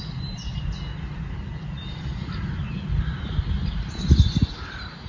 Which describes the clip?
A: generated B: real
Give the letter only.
B